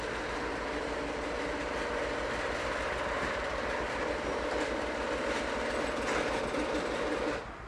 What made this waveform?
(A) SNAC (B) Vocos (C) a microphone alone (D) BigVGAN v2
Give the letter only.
C